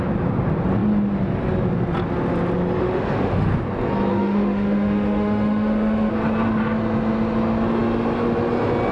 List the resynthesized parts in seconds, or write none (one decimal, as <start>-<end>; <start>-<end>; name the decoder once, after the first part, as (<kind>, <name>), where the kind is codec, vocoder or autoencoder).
2.8-3.5 (autoencoder, DAC-VAE); 4.1-6.1